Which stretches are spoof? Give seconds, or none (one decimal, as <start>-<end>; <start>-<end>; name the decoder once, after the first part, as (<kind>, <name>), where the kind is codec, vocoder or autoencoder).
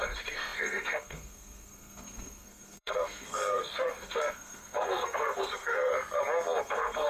0.0-5.9 (codec, SNAC); 6.6-7.1